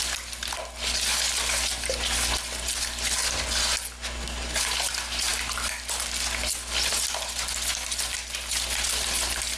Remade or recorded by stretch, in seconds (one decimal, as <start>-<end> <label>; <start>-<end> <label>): 0.0-9.6 recorded